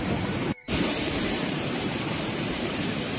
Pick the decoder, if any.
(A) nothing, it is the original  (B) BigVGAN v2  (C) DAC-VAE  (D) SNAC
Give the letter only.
B